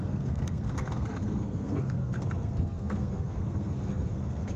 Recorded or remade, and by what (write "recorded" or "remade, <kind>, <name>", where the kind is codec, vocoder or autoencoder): remade, codec, SNAC